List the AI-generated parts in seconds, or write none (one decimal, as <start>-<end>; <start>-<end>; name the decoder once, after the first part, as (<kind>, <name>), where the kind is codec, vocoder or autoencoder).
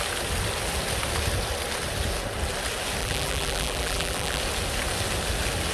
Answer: 3.0-4.4 (vocoder, BigVGAN v2)